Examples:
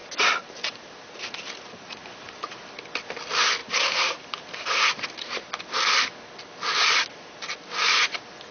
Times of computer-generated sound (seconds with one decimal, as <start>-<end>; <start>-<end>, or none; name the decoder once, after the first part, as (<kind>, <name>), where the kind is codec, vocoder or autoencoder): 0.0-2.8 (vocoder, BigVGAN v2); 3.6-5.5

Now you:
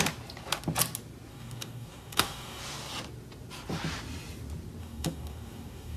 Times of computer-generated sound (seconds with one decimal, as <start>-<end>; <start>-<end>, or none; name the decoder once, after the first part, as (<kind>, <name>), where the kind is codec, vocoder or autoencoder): 1.3-2.6 (codec, DAC); 4.8-6.0

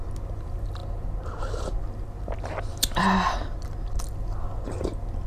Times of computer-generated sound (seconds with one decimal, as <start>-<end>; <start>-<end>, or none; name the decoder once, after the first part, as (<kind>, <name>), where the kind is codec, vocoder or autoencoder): none

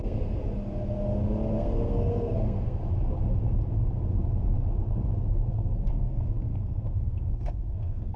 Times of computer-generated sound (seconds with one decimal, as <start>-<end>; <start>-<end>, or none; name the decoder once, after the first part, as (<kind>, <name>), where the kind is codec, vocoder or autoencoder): 0.0-0.4 (codec, SNAC); 1.5-2.8; 5.5-8.2

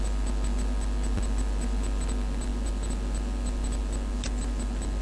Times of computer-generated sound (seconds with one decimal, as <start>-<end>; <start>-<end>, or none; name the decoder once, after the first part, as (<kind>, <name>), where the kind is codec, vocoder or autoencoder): none